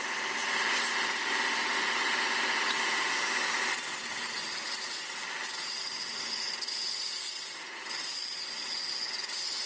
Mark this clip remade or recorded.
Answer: recorded